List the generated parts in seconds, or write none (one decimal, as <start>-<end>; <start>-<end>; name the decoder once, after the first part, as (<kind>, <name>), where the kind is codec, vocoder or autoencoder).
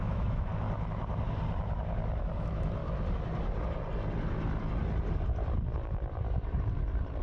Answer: 0.0-0.5 (autoencoder, DAC-VAE); 2.2-2.8